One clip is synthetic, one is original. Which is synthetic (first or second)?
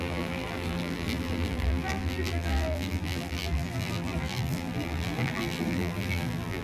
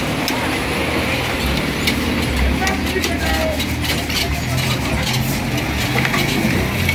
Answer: first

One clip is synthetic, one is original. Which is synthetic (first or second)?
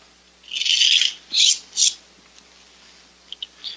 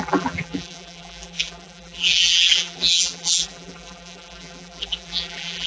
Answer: second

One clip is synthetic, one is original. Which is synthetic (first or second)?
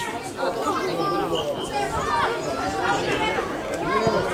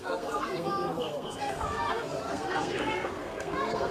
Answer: second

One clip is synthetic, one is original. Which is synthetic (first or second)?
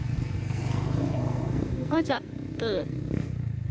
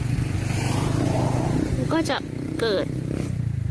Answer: first